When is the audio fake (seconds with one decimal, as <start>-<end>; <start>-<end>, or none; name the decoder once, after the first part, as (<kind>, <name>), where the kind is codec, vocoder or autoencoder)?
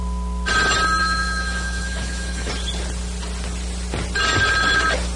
1.0-2.5 (autoencoder, DAC-VAE)